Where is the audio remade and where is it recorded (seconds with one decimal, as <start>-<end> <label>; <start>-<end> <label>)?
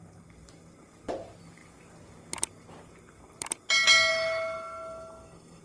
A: 0.0-4.1 recorded; 4.1-5.6 remade